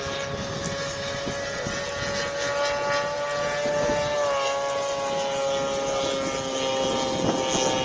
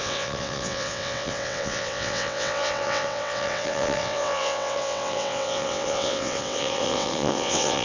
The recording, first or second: first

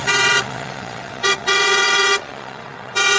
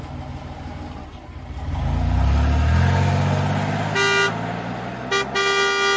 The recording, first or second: second